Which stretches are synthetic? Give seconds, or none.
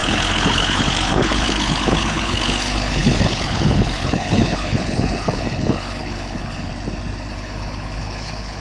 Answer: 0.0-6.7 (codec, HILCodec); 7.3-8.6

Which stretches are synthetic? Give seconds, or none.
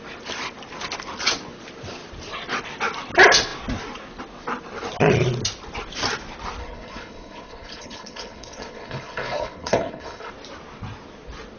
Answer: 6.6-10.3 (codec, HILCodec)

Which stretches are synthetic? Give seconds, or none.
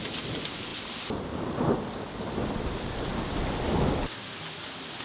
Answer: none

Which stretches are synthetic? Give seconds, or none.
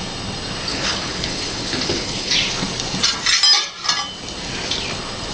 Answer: 0.7-2.3 (codec, HILCodec)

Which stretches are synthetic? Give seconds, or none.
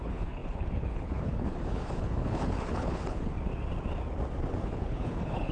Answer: 0.0-3.3 (codec, HILCodec); 4.6-5.5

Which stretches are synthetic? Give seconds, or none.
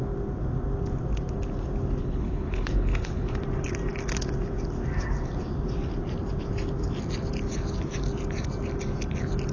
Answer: 2.0-3.4 (codec, HILCodec)